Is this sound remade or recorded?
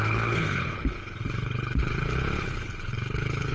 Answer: remade